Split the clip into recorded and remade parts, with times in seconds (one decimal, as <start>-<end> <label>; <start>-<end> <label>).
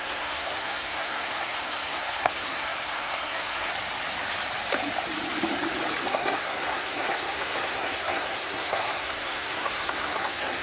0.0-3.7 remade; 3.7-6.1 recorded; 6.1-10.6 remade